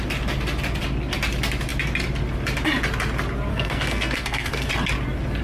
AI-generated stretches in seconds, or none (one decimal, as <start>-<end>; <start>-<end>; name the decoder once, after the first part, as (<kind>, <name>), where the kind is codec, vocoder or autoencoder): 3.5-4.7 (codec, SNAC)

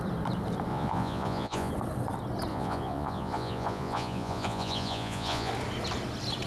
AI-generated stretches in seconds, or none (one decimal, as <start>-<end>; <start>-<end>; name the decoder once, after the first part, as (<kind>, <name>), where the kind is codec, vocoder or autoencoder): 0.7-1.7 (vocoder, Vocos); 2.5-5.5

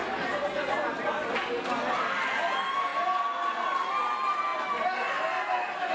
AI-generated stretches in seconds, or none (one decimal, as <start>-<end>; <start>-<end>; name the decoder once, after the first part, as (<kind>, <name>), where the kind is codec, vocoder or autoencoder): none

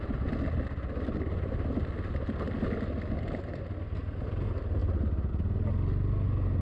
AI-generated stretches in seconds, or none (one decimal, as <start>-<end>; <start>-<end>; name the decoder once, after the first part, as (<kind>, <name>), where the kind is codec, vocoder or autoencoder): none